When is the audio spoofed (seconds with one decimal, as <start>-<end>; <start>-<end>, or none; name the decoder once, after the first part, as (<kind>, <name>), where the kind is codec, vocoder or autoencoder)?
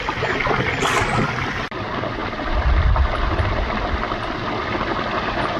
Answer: none